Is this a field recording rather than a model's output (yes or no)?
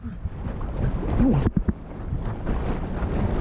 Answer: yes